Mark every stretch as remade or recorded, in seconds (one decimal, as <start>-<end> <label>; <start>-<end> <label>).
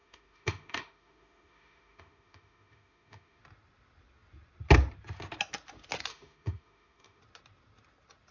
0.0-3.4 remade; 3.4-6.1 recorded; 6.1-7.2 remade; 7.2-8.3 recorded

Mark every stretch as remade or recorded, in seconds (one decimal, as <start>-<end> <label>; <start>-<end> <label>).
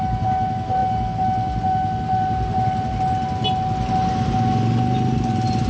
0.0-5.7 recorded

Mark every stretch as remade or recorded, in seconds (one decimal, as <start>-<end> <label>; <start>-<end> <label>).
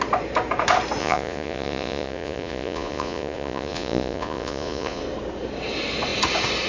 0.0-1.0 recorded; 1.0-5.0 remade; 5.0-6.7 recorded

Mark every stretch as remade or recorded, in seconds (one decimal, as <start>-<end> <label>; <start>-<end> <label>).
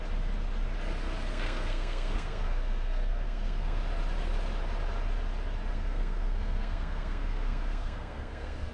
0.0-1.3 recorded; 1.3-3.8 remade; 3.8-5.7 recorded; 5.7-8.7 remade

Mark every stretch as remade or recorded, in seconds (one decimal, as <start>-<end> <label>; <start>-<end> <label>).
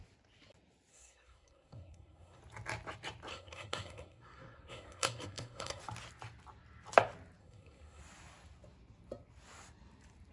0.0-0.9 recorded; 0.9-2.4 remade; 2.4-3.3 recorded; 3.3-5.8 remade; 5.8-7.4 recorded; 7.4-8.0 remade; 8.0-10.3 recorded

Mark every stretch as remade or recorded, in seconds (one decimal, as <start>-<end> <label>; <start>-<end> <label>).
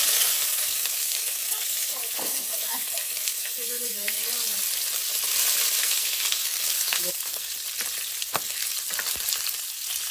0.0-4.2 remade; 4.2-5.8 recorded; 5.8-7.5 remade; 7.5-8.2 recorded; 8.2-8.6 remade; 8.6-10.1 recorded